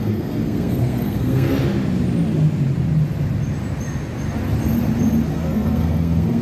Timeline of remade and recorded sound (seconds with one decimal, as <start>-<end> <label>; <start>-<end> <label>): 0.0-1.5 remade; 1.5-5.3 recorded; 5.3-6.4 remade